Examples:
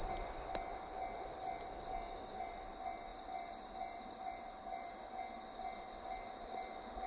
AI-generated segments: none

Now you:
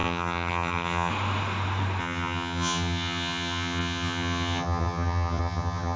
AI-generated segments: 0.0-1.1 (vocoder, HiFi-GAN); 2.0-6.0